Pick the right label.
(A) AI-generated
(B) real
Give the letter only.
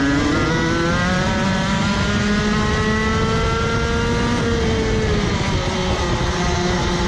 B